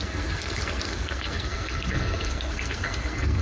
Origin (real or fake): fake